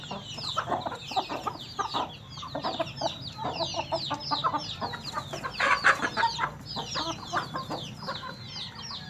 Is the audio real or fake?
real